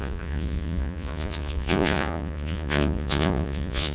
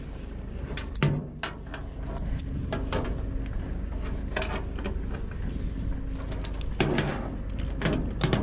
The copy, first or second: first